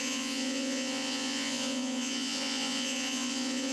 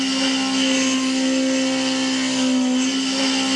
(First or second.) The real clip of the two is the second